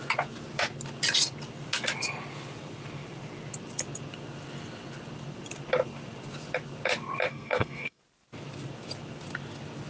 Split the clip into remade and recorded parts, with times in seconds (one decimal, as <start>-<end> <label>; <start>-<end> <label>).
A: 0.0-7.3 recorded; 7.3-8.0 remade; 8.0-9.9 recorded